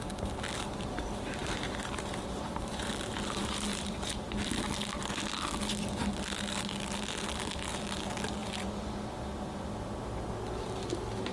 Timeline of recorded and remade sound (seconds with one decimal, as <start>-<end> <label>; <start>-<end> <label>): 0.0-1.4 recorded; 1.4-2.9 remade; 2.9-3.7 recorded; 3.7-4.3 remade; 4.3-11.3 recorded